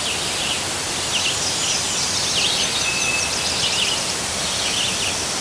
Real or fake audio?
real